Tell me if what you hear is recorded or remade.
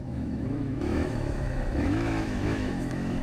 remade